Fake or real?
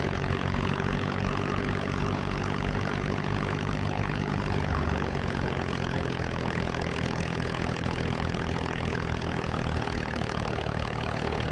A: fake